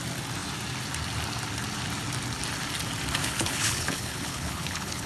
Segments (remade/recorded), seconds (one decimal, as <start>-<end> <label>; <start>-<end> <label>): 0.0-3.2 recorded; 3.2-5.1 remade